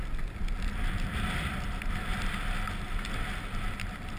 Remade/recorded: recorded